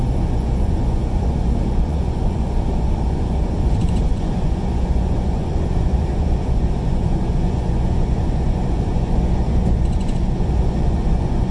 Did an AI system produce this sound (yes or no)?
yes